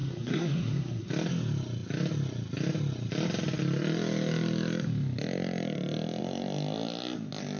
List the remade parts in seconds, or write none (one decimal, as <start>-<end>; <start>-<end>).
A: 0.0-1.1